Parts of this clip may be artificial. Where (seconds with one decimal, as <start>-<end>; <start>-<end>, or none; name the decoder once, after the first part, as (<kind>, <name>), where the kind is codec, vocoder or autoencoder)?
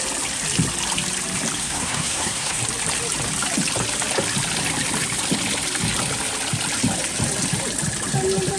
1.6-2.6 (codec, SNAC)